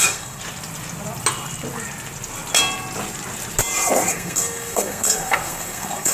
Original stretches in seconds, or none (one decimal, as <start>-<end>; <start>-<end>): 0.4-4.1

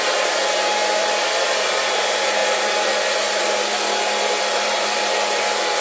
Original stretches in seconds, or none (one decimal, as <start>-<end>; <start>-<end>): 0.0-5.8

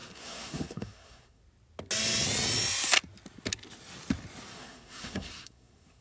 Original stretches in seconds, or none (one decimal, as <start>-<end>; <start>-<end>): 1.4-4.5

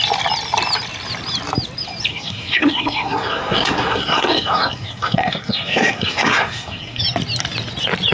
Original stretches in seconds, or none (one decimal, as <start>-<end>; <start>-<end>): 0.0-2.1; 7.0-8.1

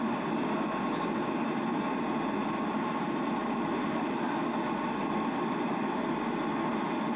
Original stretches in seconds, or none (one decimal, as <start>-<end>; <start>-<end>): 0.0-7.2

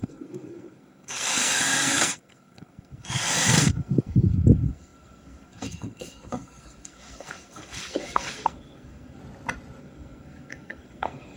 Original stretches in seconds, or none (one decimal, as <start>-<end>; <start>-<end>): 9.2-9.8